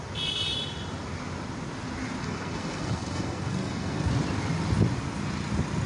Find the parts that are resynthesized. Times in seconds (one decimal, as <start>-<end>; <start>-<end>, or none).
2.2-4.1